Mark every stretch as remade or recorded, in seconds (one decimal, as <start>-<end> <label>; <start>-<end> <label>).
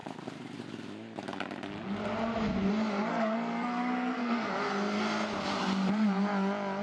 0.0-3.1 recorded; 3.1-4.5 remade; 4.5-6.8 recorded